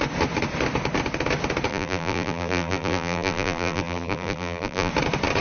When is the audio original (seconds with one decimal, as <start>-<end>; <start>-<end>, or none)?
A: 0.0-1.7; 4.9-5.4